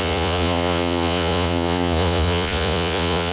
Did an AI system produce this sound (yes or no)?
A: yes